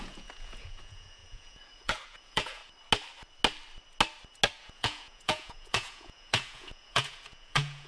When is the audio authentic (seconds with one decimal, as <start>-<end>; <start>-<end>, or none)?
2.6-4.6